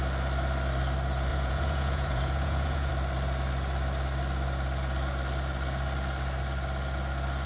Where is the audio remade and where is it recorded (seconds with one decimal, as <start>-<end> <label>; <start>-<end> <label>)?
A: 0.0-1.3 recorded; 1.3-2.9 remade; 2.9-7.5 recorded